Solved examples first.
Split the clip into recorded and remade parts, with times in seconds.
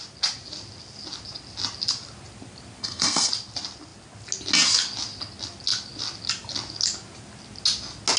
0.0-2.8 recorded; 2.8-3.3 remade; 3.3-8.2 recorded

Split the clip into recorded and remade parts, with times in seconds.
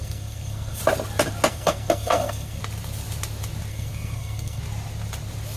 0.0-0.8 remade; 0.8-1.5 recorded; 1.5-2.6 remade; 2.6-3.7 recorded; 3.7-4.6 remade; 4.6-5.6 recorded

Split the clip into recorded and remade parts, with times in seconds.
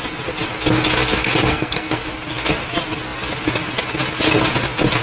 0.0-1.5 recorded; 1.5-2.1 remade; 2.1-5.0 recorded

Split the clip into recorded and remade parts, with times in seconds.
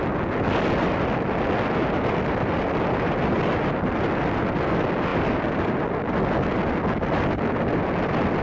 0.0-8.4 recorded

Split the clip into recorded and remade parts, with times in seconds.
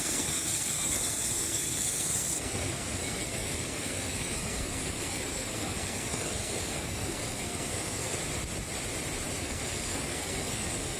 0.0-8.2 remade; 8.2-9.4 recorded; 9.4-11.0 remade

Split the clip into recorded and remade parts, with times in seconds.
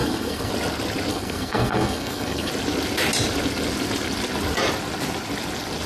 0.0-0.5 remade; 0.5-1.1 recorded; 1.1-2.5 remade; 2.5-5.9 recorded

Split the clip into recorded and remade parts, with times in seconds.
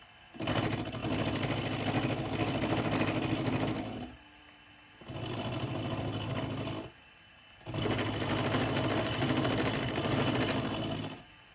0.0-11.5 recorded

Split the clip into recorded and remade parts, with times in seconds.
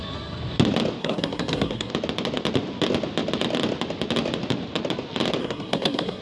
0.0-1.0 recorded; 1.0-1.9 remade; 1.9-5.4 recorded; 5.4-6.2 remade